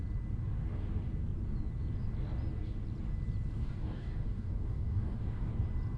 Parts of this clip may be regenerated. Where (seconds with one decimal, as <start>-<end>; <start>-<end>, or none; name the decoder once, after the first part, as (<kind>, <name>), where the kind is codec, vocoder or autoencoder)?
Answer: 3.6-5.5 (codec, DAC)